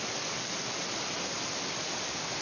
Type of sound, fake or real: real